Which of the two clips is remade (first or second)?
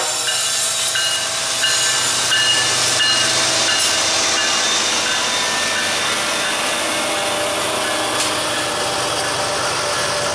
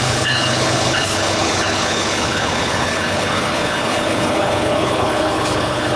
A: second